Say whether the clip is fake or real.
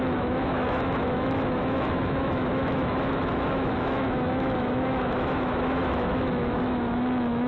fake